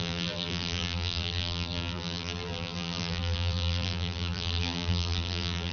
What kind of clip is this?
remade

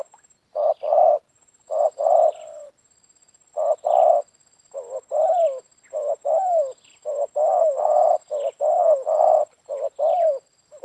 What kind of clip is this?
recorded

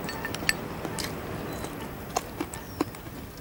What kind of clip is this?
recorded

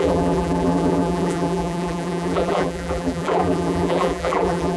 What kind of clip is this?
remade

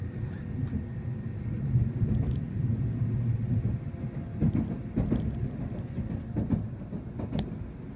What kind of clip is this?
recorded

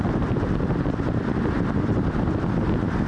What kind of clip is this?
recorded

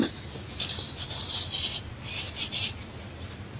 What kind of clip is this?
recorded